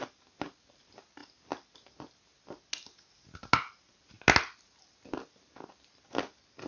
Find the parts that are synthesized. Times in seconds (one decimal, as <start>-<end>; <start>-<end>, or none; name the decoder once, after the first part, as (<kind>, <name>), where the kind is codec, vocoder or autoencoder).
none